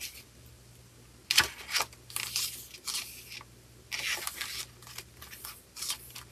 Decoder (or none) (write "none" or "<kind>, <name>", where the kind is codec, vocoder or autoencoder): none